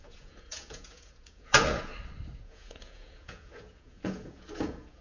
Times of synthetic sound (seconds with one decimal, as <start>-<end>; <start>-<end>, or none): 0.0-1.9; 2.4-5.0